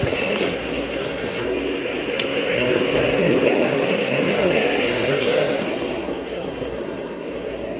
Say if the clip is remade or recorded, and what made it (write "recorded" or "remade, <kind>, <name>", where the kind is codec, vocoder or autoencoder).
remade, codec, SNAC